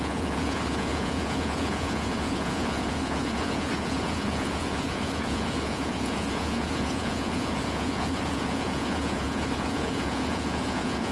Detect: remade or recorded remade